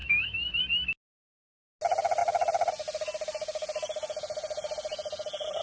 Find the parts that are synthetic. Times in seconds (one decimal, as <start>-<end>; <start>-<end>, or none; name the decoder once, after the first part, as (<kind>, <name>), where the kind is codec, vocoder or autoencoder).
0.0-0.6 (autoencoder, DAC-VAE)